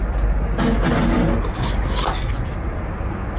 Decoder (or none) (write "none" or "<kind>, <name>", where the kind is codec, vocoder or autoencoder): none